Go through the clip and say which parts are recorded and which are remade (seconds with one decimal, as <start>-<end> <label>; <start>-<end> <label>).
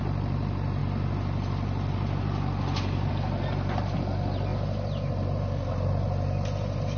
0.0-7.0 recorded